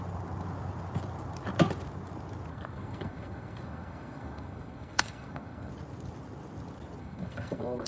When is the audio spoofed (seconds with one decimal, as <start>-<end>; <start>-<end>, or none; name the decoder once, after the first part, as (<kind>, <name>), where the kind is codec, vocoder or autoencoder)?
2.5-5.7 (codec, SNAC); 7.0-7.9